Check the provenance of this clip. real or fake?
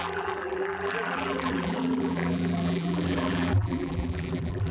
fake